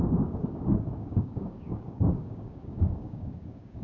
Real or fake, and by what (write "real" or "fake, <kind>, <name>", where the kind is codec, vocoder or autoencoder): fake, codec, DAC